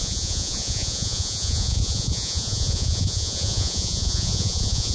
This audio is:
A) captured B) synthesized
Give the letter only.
B